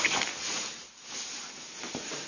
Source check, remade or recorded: recorded